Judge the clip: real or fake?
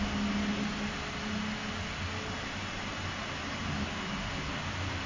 real